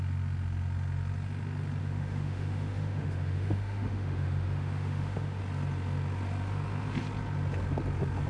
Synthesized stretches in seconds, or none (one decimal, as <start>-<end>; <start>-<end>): 1.8-5.4